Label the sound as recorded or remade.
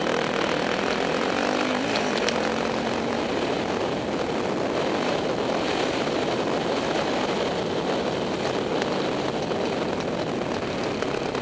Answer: recorded